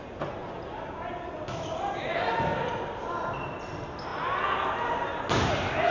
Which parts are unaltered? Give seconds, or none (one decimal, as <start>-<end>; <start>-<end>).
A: 0.0-5.9